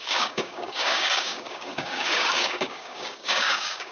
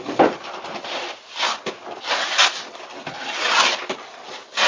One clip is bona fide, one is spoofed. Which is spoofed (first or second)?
first